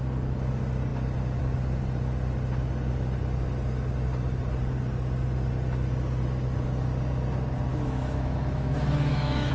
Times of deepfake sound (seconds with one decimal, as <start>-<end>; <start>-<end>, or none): 7.7-9.5